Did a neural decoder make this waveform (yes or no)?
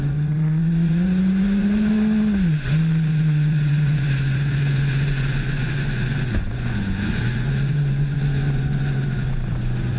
yes